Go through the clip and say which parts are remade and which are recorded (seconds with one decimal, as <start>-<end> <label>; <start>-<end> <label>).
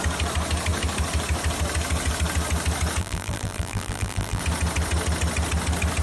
0.0-3.0 recorded; 3.0-4.4 remade; 4.4-6.0 recorded